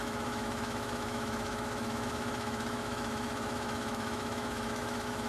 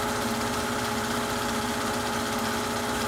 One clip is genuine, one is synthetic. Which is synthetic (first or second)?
first